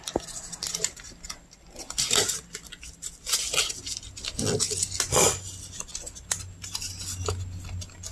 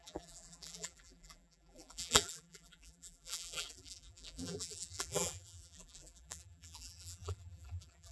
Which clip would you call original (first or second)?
first